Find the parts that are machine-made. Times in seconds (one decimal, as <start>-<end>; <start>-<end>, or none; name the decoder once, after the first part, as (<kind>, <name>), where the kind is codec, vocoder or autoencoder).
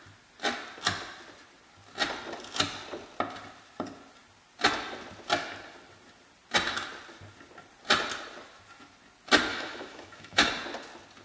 9.5-10.5 (autoencoder, DAC-VAE)